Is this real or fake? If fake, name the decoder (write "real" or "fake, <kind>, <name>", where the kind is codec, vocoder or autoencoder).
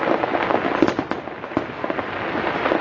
real